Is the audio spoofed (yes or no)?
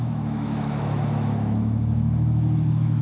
yes